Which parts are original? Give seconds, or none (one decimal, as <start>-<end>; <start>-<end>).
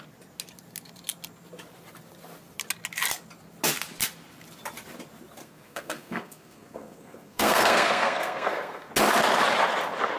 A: 0.0-5.4; 8.9-10.2